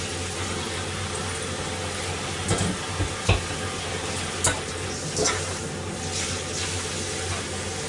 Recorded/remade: recorded